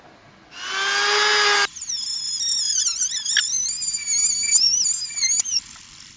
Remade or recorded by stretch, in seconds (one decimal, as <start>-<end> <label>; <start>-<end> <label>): 0.0-6.2 recorded